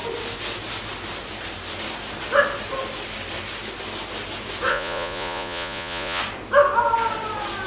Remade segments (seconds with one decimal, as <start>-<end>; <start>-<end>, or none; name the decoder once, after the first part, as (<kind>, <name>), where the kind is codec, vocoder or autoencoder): 4.7-6.2 (vocoder, Vocos)